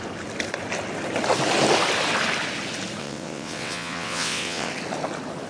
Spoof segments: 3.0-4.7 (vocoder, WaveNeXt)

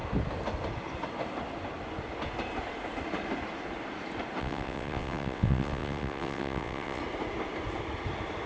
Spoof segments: 4.4-7.0 (vocoder, WaveNeXt)

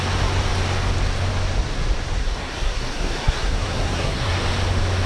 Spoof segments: 2.2-4.4 (codec, SNAC)

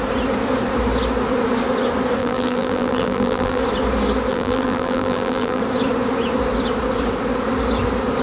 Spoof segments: 2.2-3.6 (vocoder, BigVGAN v2); 4.3-5.6

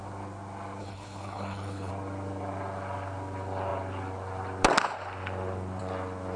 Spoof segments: 0.8-1.9 (codec, HILCodec)

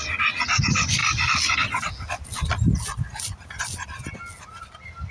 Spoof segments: none